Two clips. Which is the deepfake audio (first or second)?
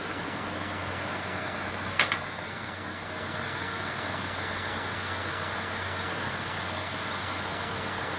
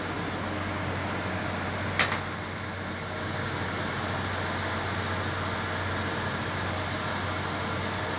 first